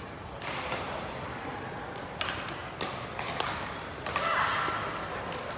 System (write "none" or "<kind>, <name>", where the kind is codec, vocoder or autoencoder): none